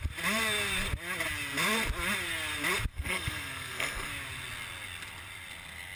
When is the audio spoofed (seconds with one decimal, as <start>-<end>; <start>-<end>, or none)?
2.9-4.1